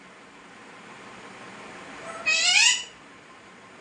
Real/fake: fake